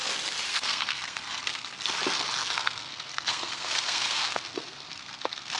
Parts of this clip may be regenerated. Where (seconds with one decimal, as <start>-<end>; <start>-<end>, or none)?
0.5-1.8; 2.4-5.6